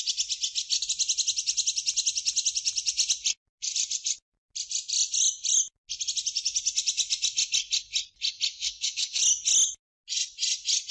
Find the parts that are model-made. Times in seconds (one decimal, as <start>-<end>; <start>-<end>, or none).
8.5-9.2